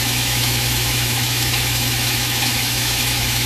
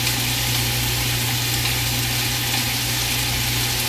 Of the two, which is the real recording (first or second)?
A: second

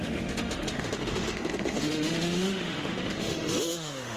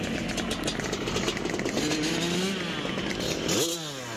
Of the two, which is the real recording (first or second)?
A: second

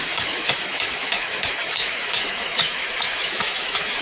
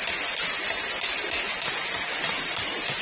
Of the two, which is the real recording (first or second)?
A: second